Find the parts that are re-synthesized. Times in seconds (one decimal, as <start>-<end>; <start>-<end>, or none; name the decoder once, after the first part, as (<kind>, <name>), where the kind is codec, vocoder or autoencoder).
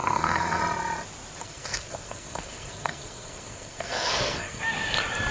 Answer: 0.0-0.6 (codec, SNAC); 1.4-4.6